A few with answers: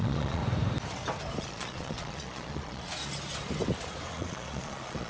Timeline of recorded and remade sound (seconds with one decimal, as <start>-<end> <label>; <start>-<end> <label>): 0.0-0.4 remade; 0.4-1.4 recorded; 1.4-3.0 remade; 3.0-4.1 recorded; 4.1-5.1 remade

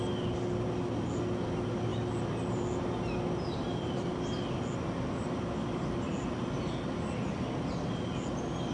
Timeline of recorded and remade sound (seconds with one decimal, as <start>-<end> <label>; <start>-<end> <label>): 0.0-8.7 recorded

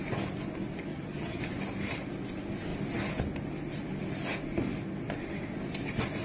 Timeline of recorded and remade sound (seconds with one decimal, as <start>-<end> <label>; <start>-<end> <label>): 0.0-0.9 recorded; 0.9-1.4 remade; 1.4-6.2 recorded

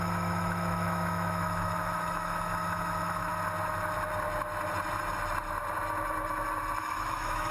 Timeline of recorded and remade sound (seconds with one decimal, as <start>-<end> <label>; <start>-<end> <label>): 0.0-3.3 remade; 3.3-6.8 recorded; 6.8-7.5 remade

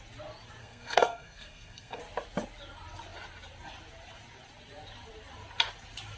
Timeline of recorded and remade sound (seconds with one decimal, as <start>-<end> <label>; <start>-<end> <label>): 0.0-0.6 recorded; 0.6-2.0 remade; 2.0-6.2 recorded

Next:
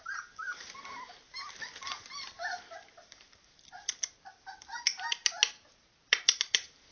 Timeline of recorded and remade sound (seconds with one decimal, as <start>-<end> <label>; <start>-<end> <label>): 0.0-6.9 recorded

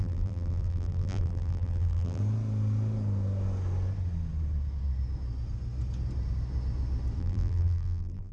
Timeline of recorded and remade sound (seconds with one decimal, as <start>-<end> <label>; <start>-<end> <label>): 0.0-2.2 remade; 2.2-7.2 recorded; 7.2-8.3 remade

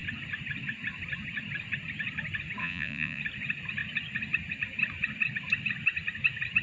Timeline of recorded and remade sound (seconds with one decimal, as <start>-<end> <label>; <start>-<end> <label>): 0.0-2.6 recorded; 2.6-3.2 remade; 3.2-6.6 recorded